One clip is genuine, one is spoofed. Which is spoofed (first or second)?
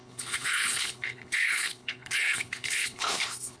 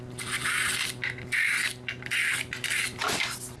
first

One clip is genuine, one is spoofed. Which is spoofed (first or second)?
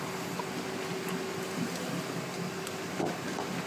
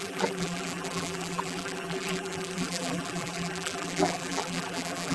second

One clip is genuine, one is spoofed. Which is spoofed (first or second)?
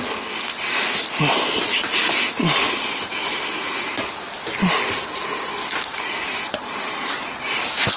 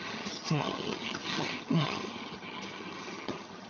second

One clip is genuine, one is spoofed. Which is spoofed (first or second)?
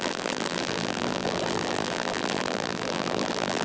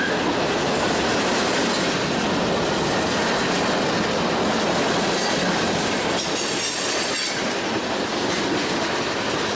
first